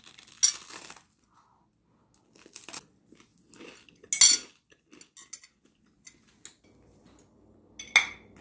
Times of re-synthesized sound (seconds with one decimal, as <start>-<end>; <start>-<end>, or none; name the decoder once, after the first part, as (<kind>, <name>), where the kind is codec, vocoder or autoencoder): none